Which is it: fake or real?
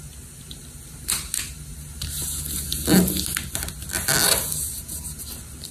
real